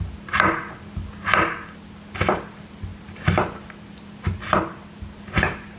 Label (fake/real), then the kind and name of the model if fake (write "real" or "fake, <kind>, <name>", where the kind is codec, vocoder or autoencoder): real